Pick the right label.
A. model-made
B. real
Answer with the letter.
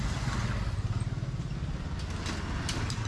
B